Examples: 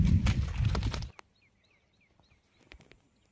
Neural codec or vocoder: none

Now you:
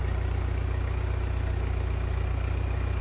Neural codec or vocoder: none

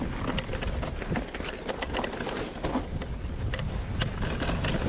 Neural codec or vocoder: none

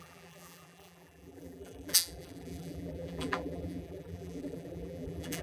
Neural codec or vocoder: vocoder, BigVGAN v2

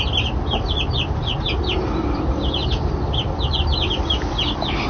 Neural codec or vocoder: none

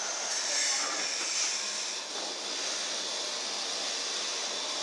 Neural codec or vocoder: none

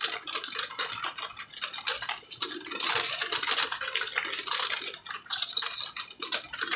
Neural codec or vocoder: none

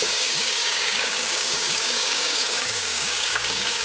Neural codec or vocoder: codec, DAC